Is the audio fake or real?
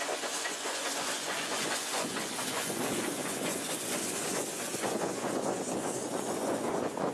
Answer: fake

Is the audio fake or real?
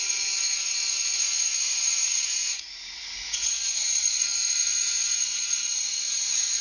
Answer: fake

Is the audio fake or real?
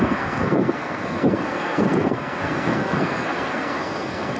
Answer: fake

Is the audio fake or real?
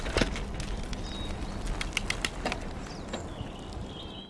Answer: real